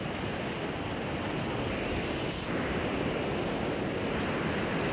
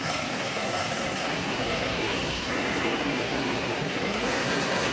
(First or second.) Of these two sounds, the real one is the first